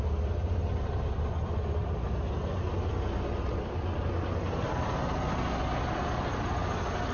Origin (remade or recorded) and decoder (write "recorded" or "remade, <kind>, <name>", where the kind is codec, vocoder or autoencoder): recorded